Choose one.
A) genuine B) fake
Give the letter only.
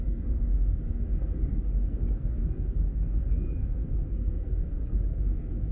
B